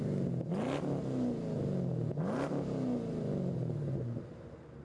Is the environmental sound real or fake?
real